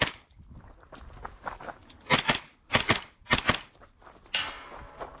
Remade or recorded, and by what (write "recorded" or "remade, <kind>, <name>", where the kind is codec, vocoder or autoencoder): recorded